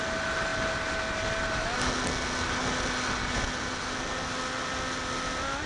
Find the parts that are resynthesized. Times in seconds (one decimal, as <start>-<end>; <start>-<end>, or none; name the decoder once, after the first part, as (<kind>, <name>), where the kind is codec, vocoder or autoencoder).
none